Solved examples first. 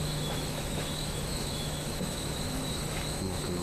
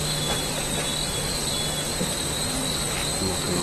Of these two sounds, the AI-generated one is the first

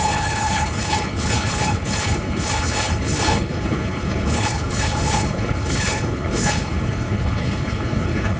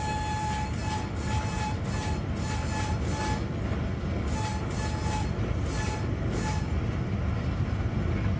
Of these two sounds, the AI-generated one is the first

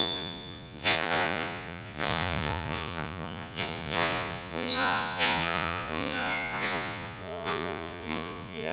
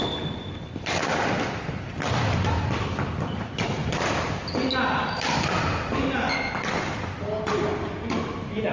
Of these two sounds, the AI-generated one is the first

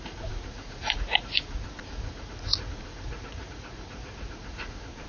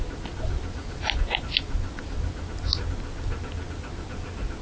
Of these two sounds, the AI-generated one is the first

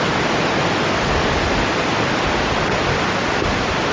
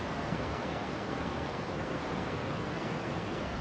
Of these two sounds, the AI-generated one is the second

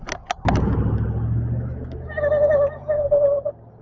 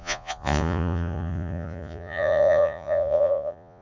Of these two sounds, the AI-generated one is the second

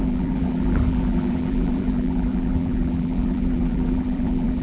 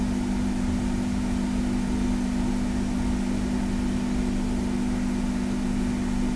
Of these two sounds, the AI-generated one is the first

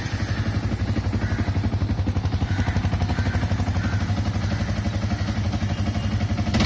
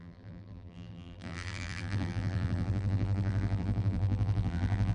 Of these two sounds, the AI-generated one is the second